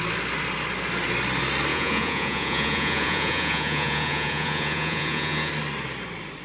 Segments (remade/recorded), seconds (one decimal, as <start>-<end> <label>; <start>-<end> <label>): 0.0-1.7 recorded; 1.7-5.5 remade; 5.5-6.4 recorded